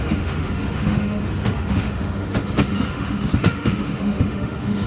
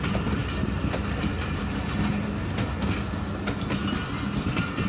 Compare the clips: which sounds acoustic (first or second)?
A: second